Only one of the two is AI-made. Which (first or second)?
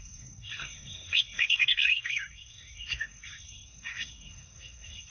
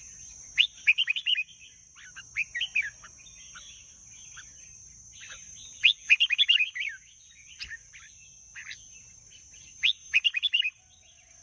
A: first